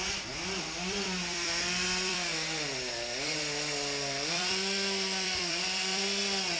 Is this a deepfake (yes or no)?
yes